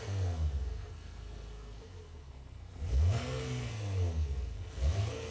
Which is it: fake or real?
fake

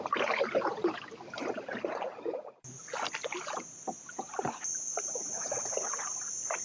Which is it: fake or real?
real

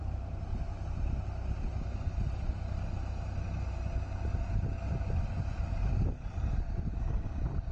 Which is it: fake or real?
real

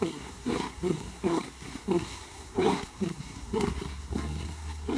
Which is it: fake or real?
fake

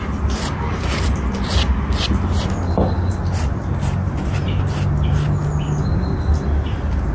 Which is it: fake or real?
real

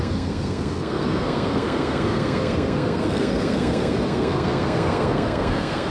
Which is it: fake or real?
fake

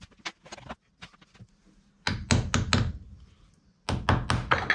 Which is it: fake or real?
real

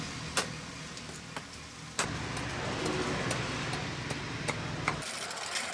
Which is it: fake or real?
real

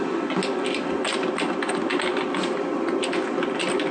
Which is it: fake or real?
real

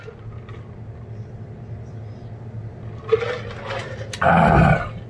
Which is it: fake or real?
real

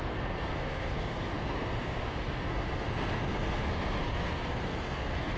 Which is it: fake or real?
fake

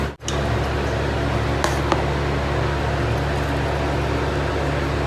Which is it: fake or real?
real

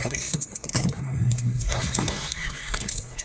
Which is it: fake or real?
fake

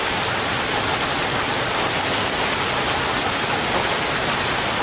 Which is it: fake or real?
real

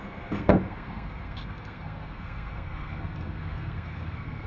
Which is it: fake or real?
fake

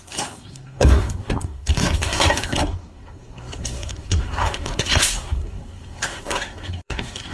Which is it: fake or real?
fake